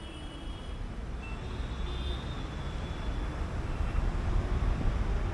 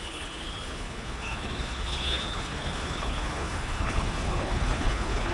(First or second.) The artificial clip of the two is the second